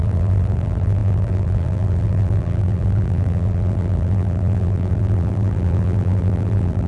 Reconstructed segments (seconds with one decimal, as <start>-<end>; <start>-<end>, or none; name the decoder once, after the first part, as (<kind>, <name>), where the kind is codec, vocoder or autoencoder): 0.0-6.9 (vocoder, BigVGAN v2)